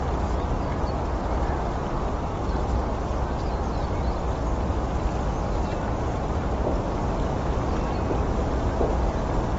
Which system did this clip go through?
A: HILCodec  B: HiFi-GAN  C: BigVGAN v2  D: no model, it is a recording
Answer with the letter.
D